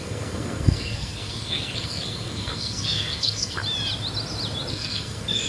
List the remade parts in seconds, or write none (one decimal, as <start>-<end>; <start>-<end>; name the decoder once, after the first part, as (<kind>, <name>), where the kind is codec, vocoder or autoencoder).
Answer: 0.0-3.6 (codec, SNAC); 4.7-5.5

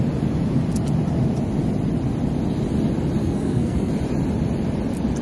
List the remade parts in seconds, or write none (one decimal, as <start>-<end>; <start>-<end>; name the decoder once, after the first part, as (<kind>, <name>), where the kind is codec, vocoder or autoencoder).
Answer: 3.2-3.9 (codec, SNAC)

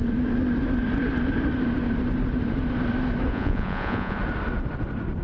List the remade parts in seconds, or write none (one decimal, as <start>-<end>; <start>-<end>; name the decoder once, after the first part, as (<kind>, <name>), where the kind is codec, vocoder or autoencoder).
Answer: 3.3-4.2 (vocoder, Vocos)